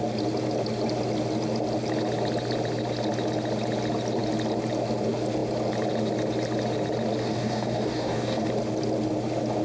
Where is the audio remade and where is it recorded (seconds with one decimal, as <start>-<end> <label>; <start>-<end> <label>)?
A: 0.0-7.2 recorded; 7.2-8.5 remade; 8.5-9.6 recorded